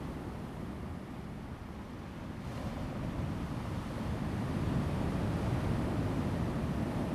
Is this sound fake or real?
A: real